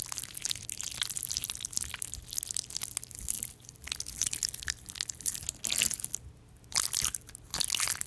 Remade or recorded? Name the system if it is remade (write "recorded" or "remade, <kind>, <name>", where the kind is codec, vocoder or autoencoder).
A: recorded